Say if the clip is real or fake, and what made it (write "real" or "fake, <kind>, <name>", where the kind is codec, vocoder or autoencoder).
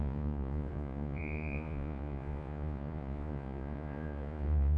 fake, vocoder, Vocos